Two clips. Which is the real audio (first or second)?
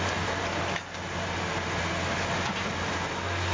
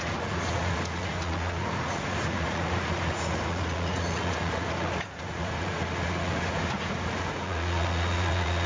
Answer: first